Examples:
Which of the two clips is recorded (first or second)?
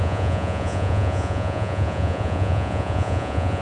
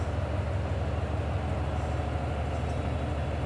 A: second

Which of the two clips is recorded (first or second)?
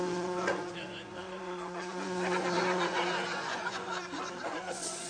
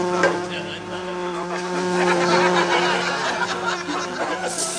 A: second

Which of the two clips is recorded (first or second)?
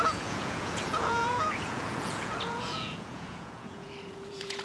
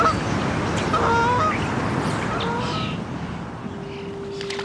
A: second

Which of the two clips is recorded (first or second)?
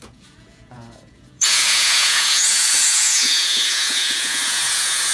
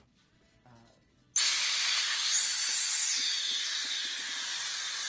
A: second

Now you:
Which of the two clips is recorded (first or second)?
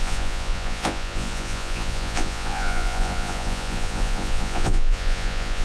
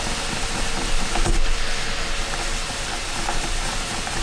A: second